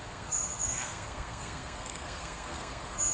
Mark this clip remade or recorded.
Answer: remade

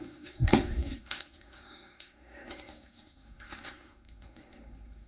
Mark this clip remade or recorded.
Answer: remade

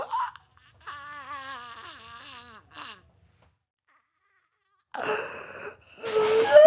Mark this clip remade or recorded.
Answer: recorded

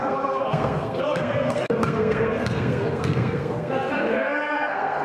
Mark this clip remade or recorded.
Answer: remade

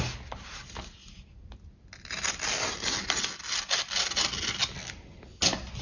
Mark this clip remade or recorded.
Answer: recorded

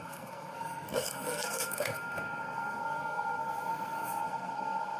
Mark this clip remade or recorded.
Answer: remade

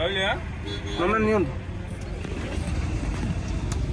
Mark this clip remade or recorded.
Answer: recorded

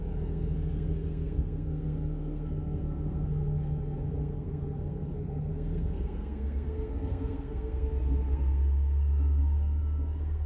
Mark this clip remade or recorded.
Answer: remade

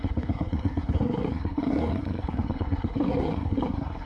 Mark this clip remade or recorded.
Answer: remade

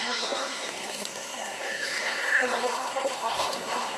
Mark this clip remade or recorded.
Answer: remade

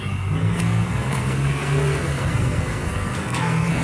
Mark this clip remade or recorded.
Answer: remade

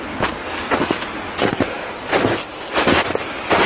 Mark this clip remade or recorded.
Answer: recorded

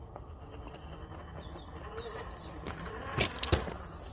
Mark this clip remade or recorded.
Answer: recorded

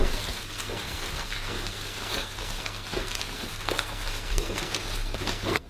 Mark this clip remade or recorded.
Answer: remade